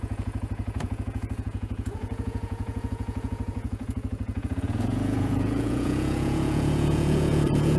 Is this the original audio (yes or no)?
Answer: no